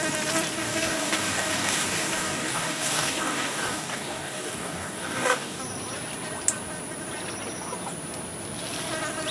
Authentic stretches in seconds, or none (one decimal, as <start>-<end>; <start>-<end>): 0.0-0.6; 5.6-9.3